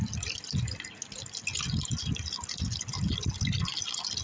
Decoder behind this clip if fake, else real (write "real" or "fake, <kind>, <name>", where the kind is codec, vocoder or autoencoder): real